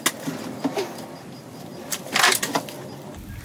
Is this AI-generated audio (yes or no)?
no